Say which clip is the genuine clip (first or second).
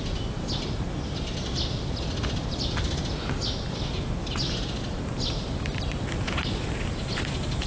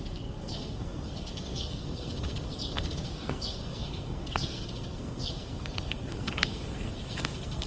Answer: first